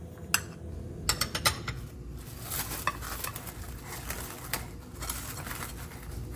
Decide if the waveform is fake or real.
real